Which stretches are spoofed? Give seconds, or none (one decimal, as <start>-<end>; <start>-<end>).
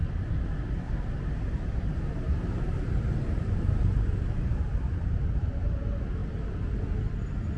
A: 0.0-4.6